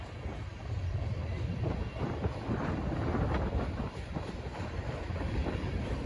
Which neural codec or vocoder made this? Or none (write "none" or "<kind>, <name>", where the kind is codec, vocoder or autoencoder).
vocoder, BigVGAN v2